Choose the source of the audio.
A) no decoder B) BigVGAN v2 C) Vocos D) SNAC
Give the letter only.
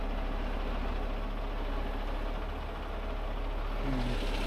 A